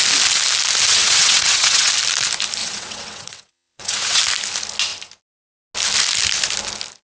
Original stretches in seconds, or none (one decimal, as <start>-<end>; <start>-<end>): 0.0-0.9; 1.9-2.6; 4.2-7.1